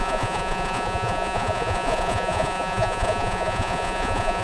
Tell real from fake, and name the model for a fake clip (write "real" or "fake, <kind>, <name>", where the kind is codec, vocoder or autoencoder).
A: fake, vocoder, Vocos